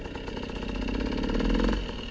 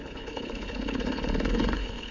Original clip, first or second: first